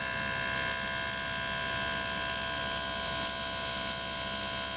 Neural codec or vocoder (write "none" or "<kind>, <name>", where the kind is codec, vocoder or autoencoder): none